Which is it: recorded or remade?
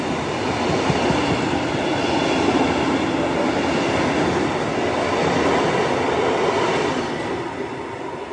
recorded